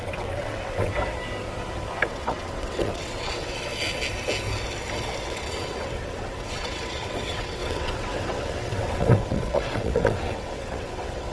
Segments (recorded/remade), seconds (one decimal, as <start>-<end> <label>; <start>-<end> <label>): 0.0-0.9 remade; 0.9-2.1 recorded; 2.1-3.7 remade; 3.7-5.2 recorded; 5.2-11.3 remade